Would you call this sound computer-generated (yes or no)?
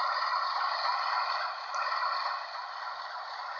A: no